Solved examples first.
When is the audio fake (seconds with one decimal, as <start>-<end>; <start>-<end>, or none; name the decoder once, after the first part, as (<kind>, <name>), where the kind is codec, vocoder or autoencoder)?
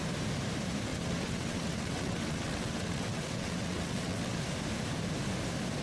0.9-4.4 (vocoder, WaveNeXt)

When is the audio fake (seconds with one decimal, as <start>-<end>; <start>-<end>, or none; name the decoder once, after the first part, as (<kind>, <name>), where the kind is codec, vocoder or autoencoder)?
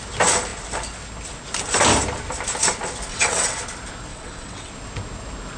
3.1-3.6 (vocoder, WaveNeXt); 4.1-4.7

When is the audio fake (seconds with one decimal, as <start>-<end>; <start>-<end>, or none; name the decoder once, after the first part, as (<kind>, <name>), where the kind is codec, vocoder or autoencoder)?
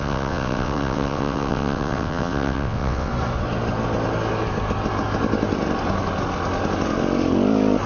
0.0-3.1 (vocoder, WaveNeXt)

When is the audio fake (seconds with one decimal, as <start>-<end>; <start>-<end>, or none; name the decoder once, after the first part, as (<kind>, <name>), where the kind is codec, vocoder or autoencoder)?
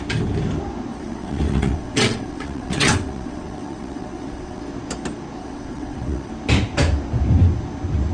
0.9-4.6 (vocoder, WaveNeXt); 5.4-6.3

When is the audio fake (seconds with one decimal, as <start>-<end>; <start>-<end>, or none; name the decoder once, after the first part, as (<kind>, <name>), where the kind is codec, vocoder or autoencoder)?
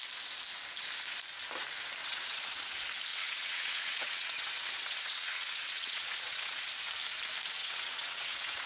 2.0-2.7 (vocoder, WaveNeXt); 3.1-6.7; 7.6-8.7